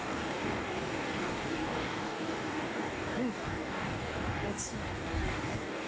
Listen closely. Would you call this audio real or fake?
fake